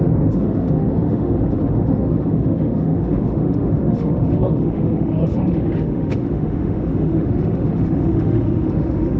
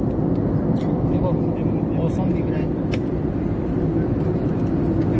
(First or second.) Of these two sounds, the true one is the second